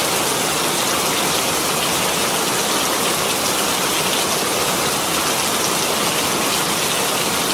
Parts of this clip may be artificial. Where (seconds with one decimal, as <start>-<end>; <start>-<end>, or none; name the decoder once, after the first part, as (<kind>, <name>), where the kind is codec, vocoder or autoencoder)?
none